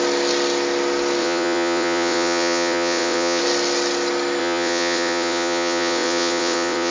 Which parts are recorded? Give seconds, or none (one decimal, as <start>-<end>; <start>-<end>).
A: 0.0-1.2; 3.4-4.4